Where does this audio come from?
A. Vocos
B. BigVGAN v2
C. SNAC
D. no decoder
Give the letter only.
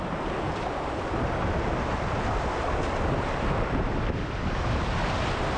D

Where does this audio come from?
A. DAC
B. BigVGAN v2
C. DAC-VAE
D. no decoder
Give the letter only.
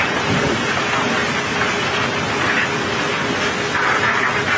D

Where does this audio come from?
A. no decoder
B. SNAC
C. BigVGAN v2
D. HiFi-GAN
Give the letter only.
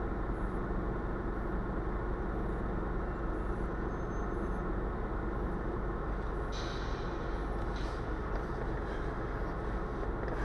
A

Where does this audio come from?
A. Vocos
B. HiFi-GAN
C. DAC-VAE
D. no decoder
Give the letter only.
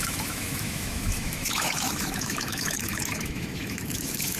C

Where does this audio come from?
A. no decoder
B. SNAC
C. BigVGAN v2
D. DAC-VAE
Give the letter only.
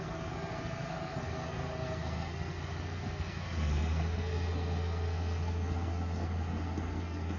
B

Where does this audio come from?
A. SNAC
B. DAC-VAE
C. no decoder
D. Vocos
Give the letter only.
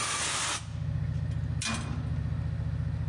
C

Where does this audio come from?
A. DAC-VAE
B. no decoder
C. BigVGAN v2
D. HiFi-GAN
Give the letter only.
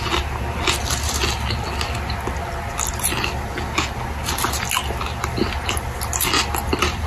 B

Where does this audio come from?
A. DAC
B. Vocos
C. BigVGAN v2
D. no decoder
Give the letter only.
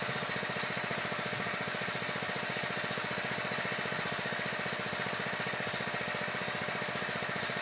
D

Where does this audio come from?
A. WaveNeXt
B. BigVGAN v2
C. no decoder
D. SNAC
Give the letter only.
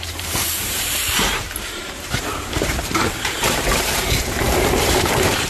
B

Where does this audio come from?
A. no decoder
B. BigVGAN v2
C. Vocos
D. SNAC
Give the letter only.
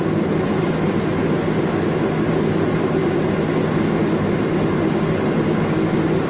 A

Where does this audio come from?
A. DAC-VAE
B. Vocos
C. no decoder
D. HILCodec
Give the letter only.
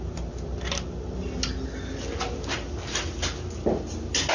C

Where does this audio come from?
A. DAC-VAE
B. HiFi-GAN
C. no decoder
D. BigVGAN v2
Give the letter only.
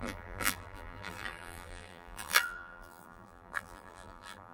D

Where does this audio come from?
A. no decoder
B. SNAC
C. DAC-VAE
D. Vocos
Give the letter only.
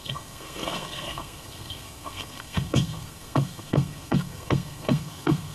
B